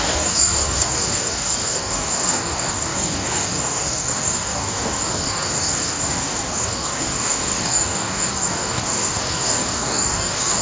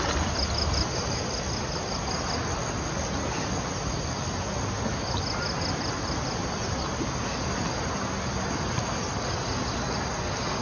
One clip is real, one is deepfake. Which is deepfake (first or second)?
first